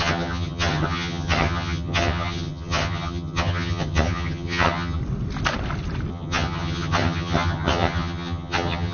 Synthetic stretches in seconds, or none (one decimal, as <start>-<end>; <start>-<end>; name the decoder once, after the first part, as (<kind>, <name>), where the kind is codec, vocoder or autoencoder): 0.0-5.0 (vocoder, HiFi-GAN); 6.1-8.9